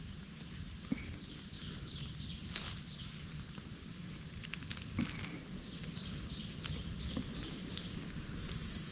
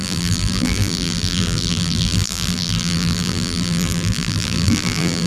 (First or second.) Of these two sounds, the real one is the first